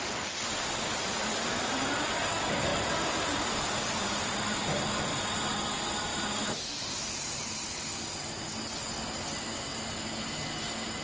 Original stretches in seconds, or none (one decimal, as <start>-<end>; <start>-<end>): 0.0-2.7; 4.6-6.1; 7.8-11.0